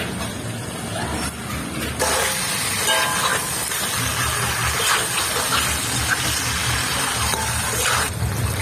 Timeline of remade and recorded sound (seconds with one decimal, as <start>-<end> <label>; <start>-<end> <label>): 0.0-6.6 recorded; 6.6-8.1 remade; 8.1-8.6 recorded